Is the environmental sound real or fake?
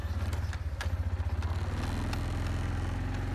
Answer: real